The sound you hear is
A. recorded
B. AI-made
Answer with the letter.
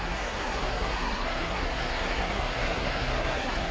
B